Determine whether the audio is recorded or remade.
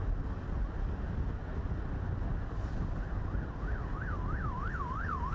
recorded